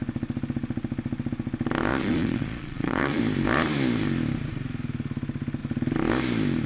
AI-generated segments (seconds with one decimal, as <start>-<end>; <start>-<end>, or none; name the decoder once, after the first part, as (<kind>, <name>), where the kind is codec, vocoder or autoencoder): 1.9-3.2 (vocoder, Vocos)